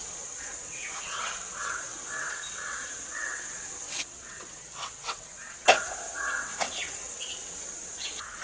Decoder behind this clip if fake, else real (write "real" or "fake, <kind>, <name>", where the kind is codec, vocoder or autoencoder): fake, vocoder, WaveNeXt